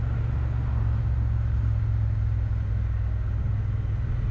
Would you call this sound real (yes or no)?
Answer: yes